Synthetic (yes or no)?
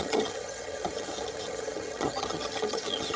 yes